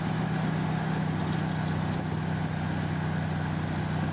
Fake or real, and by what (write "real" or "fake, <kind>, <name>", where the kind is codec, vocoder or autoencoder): real